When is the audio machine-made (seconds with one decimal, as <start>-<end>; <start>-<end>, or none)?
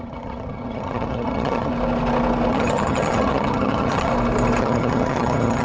0.0-1.7; 2.5-4.1; 4.6-5.6